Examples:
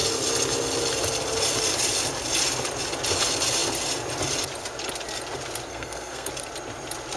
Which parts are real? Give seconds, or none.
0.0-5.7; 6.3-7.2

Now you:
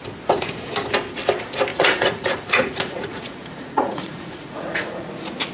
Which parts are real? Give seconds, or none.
0.0-1.7; 5.0-5.5

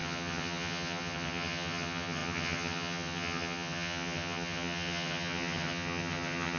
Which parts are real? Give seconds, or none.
none

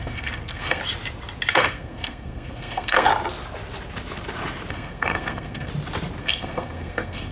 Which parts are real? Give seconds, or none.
0.8-1.5; 3.1-4.7; 5.7-6.2

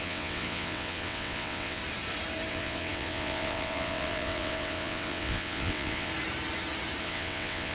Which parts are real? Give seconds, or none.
1.8-2.5; 6.1-7.0